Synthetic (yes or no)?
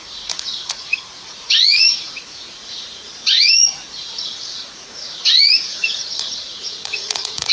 yes